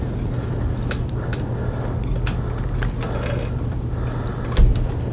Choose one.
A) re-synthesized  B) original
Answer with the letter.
B